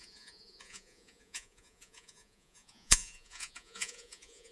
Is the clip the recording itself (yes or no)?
no